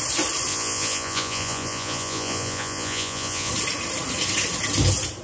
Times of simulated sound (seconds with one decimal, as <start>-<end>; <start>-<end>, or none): 0.5-3.5